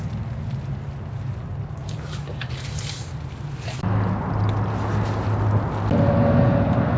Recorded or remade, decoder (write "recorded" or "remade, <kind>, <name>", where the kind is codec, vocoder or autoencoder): recorded